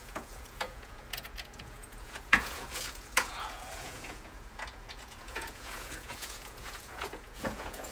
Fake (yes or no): yes